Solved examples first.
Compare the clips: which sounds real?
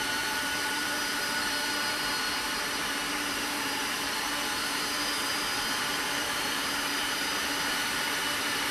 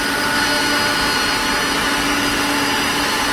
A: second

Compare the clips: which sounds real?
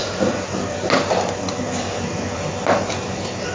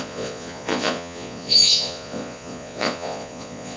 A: first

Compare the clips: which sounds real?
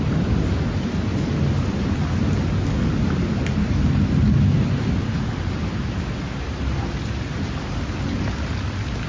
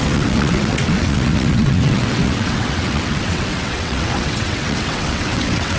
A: first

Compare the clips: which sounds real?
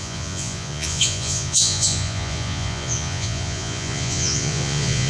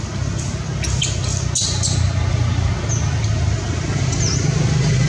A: second